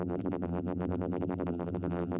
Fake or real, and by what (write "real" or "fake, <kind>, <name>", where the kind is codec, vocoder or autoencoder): fake, vocoder, BigVGAN v2